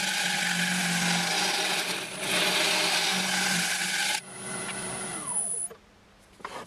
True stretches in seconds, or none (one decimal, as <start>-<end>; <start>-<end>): 0.0-5.1; 5.7-6.7